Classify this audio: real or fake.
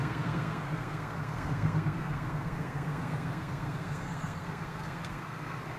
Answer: fake